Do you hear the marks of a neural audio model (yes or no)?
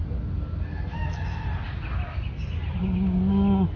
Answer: no